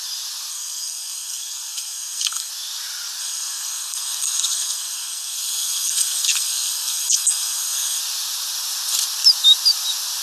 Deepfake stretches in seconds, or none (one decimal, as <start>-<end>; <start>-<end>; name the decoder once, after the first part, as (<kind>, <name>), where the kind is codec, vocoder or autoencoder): 0.5-2.5 (codec, SNAC); 3.2-8.0